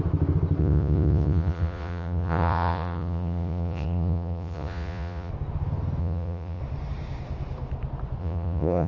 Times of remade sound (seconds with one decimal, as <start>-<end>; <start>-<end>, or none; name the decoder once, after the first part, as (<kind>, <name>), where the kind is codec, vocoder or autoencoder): 0.6-5.3 (vocoder, Vocos); 6.0-6.6; 8.2-8.9